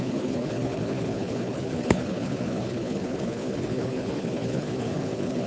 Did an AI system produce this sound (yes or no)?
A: yes